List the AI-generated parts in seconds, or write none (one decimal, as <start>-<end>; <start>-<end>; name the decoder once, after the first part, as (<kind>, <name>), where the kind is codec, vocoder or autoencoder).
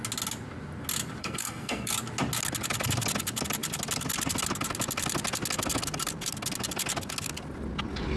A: 1.2-1.9 (codec, SNAC)